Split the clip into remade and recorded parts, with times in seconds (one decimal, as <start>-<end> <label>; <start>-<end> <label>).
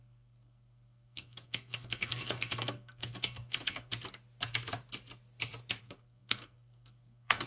0.0-3.9 remade; 3.9-5.8 recorded; 5.8-7.5 remade